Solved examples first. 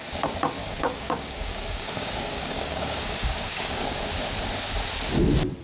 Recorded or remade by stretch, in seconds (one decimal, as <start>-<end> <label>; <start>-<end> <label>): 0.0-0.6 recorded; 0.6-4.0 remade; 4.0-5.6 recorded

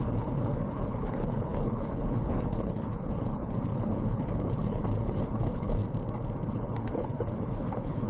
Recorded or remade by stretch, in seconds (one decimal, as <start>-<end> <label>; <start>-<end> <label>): 0.0-5.8 remade; 5.8-6.5 recorded; 6.5-8.1 remade

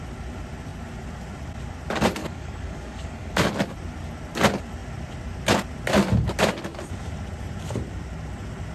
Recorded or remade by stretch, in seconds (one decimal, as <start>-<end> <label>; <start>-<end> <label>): 0.0-2.2 recorded; 2.2-3.5 remade; 3.5-8.7 recorded